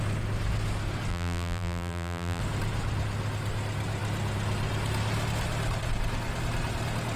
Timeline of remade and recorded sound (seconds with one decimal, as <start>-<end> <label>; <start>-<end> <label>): 0.0-1.1 recorded; 1.1-2.4 remade; 2.4-7.2 recorded